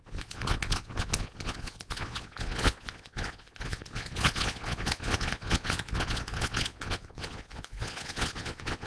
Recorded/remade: remade